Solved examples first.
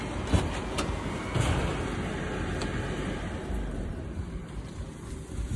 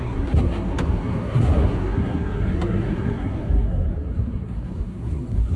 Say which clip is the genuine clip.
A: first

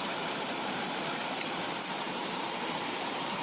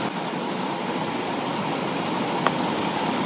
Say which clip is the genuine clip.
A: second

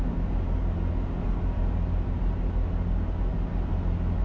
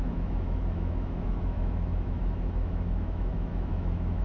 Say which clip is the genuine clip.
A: first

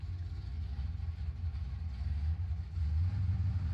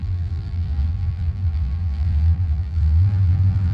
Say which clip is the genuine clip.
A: first